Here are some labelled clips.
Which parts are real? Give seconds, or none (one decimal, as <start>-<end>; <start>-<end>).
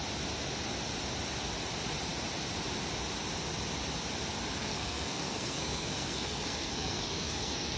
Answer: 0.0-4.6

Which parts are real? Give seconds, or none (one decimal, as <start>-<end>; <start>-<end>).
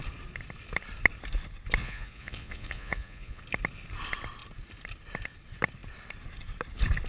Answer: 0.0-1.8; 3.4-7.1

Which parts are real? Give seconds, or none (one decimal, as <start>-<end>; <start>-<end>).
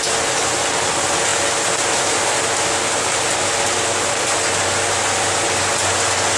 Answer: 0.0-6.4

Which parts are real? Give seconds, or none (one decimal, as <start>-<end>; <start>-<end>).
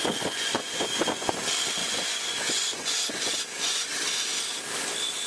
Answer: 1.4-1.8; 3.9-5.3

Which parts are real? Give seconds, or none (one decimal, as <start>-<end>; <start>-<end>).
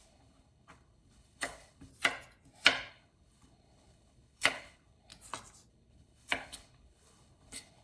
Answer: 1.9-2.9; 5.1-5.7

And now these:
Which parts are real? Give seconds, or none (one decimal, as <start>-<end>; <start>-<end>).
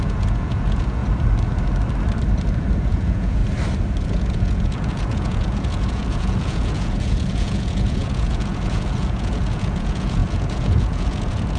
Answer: 1.0-2.9; 3.4-4.0